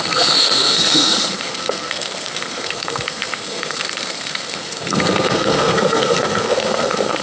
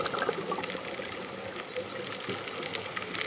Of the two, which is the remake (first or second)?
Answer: first